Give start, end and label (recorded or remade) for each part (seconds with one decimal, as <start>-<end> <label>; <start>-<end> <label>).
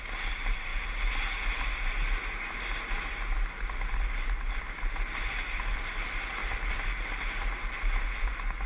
0.0-8.7 recorded